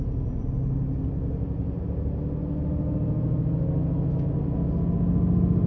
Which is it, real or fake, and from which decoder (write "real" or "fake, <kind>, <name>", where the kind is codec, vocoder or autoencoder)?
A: real